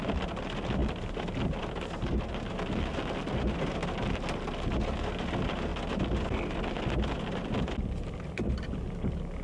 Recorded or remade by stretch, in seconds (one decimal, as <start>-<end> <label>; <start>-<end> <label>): 0.0-9.4 recorded